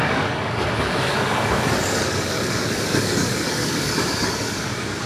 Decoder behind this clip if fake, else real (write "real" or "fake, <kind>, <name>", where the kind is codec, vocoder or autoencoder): fake, codec, DAC